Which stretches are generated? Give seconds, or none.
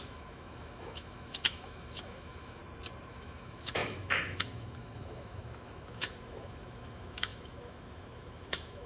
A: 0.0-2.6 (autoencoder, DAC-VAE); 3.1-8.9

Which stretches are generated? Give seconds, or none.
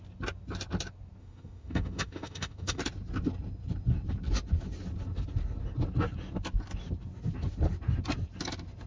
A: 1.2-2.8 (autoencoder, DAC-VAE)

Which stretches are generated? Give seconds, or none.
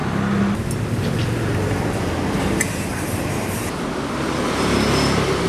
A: none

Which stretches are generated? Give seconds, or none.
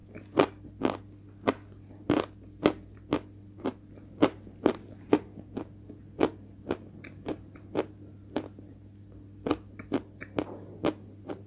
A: none